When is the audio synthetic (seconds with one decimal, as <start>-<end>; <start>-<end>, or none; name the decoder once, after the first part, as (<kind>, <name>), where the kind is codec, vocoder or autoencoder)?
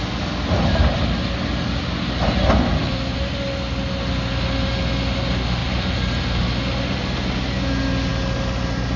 5.6-6.4 (vocoder, BigVGAN v2)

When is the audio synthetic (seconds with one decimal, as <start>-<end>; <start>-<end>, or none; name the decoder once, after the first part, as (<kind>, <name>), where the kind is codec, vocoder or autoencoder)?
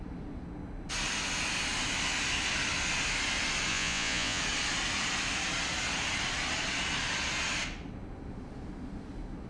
3.7-4.4 (vocoder, Vocos)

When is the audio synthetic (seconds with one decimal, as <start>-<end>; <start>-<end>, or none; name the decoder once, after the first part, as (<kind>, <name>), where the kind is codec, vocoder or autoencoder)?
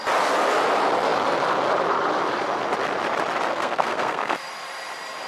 3.5-4.4 (codec, SNAC)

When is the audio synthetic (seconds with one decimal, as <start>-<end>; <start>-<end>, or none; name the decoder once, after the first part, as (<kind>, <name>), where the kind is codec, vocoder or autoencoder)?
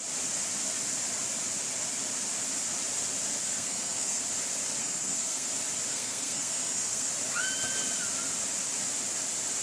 3.4-4.2 (codec, SNAC); 4.8-5.5; 5.9-7.1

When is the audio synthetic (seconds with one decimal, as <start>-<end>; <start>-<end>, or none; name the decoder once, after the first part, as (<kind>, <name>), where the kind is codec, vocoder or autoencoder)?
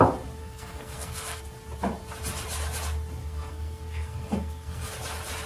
0.4-1.4 (codec, SNAC); 3.2-4.9